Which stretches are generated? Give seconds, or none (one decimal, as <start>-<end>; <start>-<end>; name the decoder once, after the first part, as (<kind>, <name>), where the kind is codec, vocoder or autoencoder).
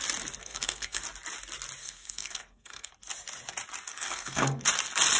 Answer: 0.4-1.0 (codec, SNAC); 1.8-2.9; 3.9-4.6